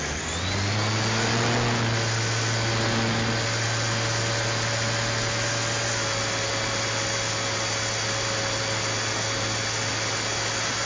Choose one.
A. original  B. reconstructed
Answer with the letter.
A